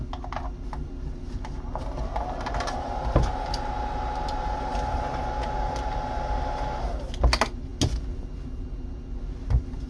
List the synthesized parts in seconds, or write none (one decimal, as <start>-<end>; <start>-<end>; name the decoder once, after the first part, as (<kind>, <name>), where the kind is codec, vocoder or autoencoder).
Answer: none